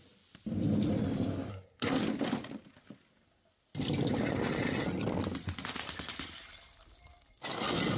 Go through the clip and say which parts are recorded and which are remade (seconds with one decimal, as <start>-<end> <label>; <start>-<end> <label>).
0.0-1.5 recorded; 1.5-2.0 remade; 2.0-8.0 recorded